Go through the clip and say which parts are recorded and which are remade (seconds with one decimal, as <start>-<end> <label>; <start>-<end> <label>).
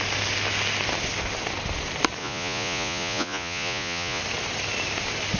0.0-2.2 recorded; 2.2-4.2 remade; 4.2-5.4 recorded